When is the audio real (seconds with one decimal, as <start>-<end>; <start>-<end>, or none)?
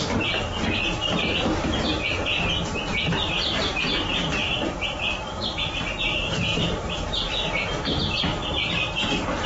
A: 0.0-1.0; 1.6-4.4; 5.8-6.5; 7.3-9.5